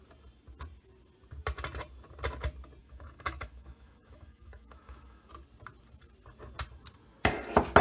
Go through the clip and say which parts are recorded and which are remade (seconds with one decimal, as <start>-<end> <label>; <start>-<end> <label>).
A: 0.0-2.8 recorded; 2.8-5.3 remade; 5.3-7.8 recorded